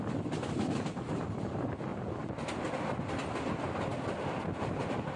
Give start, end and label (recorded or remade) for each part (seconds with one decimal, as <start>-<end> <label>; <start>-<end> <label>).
0.0-5.2 recorded